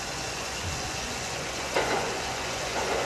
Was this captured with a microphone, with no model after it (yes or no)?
no